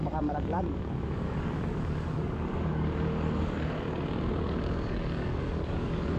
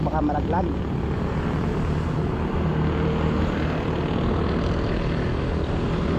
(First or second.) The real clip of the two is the second